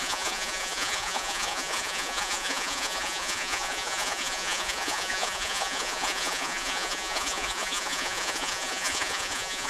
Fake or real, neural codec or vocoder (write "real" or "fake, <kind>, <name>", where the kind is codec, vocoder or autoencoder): fake, vocoder, Vocos